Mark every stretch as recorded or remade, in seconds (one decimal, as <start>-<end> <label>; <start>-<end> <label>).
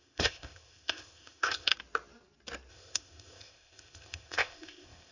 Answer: 0.0-1.7 remade; 1.7-2.7 recorded; 2.7-5.1 remade